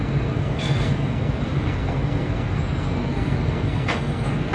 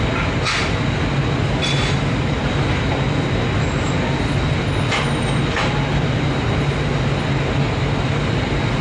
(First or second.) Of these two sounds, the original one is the second